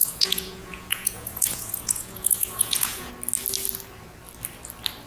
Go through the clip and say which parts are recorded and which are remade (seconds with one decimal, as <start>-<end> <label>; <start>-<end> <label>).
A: 0.0-3.1 remade; 3.1-5.1 recorded